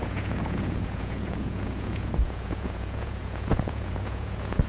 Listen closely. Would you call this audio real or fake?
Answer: fake